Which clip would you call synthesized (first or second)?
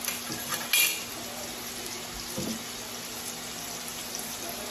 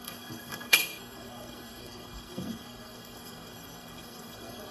second